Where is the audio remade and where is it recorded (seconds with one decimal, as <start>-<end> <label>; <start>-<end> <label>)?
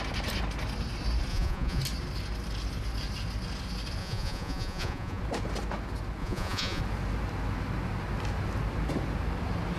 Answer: 0.0-1.3 recorded; 1.3-1.8 remade; 1.8-4.0 recorded; 4.0-5.2 remade; 5.2-6.2 recorded; 6.2-6.8 remade; 6.8-9.8 recorded